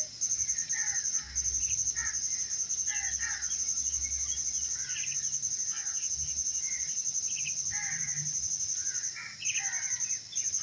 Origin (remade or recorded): recorded